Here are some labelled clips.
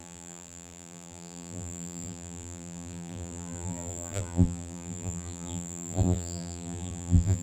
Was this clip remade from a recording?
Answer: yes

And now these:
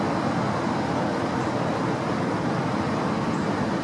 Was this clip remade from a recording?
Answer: no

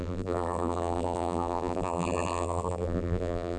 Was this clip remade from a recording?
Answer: yes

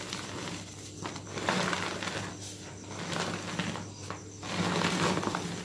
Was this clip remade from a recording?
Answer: no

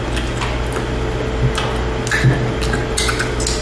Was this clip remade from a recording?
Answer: no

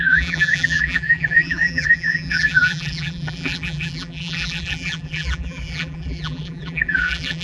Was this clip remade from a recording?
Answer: yes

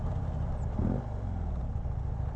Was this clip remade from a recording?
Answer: yes